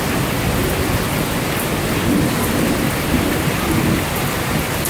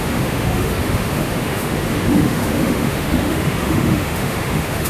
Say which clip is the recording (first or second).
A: first